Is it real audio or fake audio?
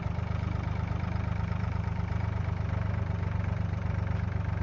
fake